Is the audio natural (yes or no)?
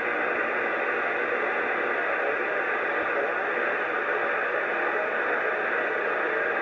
yes